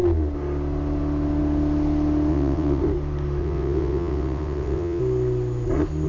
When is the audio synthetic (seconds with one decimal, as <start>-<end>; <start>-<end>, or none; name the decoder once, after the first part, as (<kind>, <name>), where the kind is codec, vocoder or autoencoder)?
2.3-2.8 (vocoder, WaveNeXt); 3.4-5.0